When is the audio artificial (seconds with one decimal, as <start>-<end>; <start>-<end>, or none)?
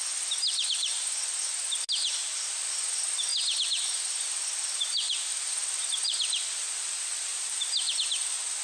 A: none